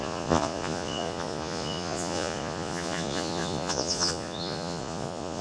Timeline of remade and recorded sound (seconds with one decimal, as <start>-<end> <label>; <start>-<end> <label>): 0.0-5.4 remade